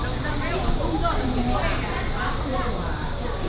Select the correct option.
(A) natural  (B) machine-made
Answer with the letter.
A